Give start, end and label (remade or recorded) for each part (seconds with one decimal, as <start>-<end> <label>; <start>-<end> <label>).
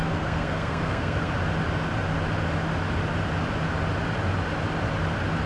0.0-1.3 remade; 1.3-5.5 recorded